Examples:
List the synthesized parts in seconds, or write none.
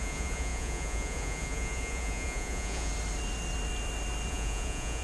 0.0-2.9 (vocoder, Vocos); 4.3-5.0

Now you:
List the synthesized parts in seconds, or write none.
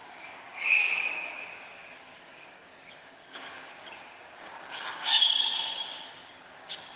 0.0-7.0 (codec, DAC)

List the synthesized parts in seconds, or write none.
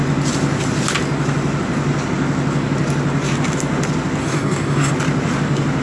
4.2-4.9 (codec, DAC)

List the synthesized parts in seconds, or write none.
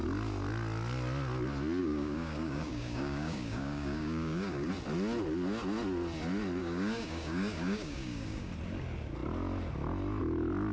1.8-4.7 (codec, DAC); 6.6-8.5